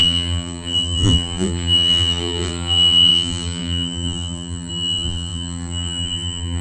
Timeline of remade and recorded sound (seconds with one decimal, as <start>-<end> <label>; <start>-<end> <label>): 0.0-6.6 remade